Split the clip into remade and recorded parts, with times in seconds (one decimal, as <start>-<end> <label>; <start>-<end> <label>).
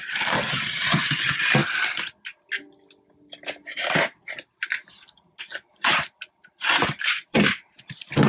0.0-1.6 remade; 1.6-4.2 recorded; 4.2-8.3 remade